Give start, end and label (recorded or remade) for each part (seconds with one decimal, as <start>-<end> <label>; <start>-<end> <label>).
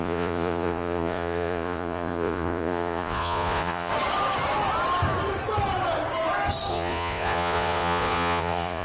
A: 0.0-3.9 remade; 3.9-6.7 recorded; 6.7-8.8 remade